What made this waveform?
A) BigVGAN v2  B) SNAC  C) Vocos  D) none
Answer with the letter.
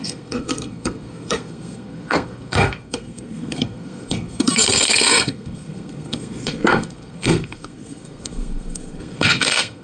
B